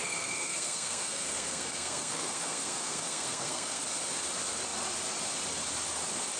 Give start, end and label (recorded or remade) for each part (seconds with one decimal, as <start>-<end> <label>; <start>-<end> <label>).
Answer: 0.0-3.8 remade; 3.8-6.4 recorded